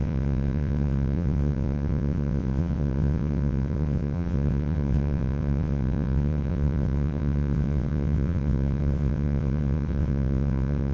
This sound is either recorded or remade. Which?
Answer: remade